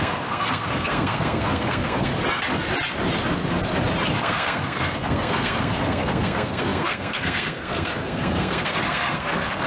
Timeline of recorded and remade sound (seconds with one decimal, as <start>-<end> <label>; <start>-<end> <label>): 0.0-2.1 remade; 2.1-4.2 recorded; 4.2-9.7 remade